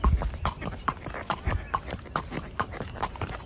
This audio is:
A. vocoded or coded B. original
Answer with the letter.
A